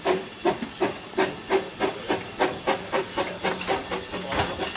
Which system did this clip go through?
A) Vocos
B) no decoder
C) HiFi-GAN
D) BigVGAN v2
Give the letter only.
D